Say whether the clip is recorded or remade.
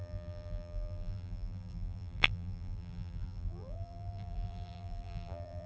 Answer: remade